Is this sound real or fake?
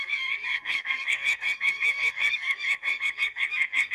fake